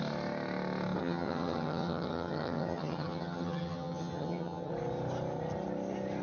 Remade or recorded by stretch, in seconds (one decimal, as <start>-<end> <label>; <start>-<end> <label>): 0.0-1.0 recorded; 1.0-4.7 remade; 4.7-6.2 recorded